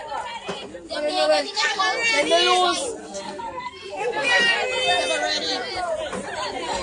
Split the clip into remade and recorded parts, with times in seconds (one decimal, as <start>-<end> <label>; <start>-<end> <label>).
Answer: 0.0-1.1 recorded; 1.1-1.8 remade; 1.8-3.0 recorded; 3.0-4.4 remade; 4.4-6.8 recorded